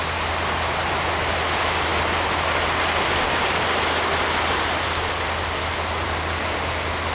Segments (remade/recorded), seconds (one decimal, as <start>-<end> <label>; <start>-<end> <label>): 0.0-7.1 recorded